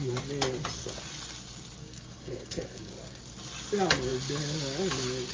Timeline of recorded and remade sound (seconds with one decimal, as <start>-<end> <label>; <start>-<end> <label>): 0.0-1.8 recorded; 1.8-2.9 remade; 2.9-5.3 recorded